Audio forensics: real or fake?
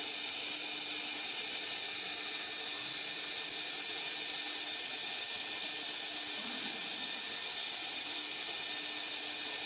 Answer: real